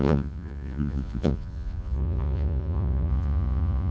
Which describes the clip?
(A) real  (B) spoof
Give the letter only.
B